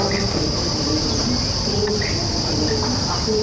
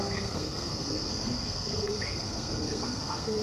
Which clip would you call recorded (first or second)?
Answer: first